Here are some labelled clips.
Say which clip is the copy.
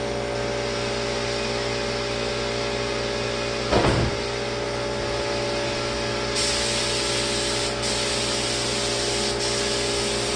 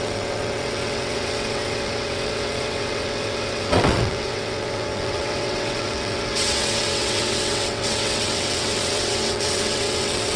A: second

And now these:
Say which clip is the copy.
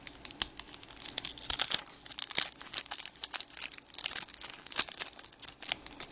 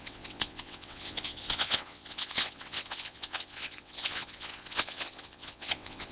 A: second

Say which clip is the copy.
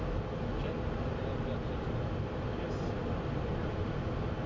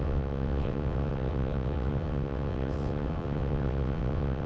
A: second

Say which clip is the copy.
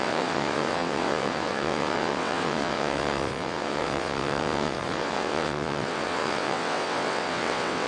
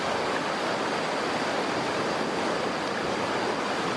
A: first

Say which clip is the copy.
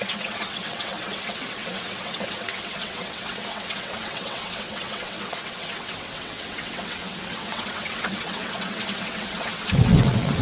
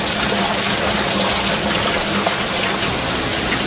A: first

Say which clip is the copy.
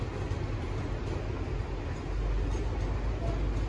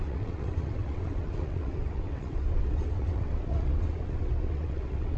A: second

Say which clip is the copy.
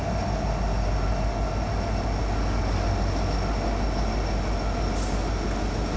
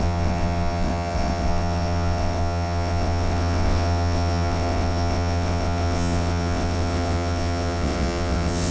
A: second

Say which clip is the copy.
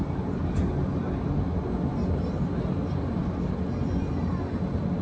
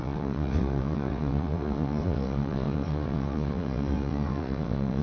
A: second